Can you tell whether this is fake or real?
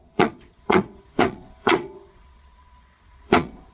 fake